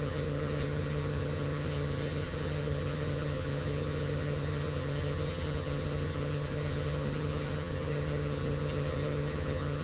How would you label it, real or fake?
fake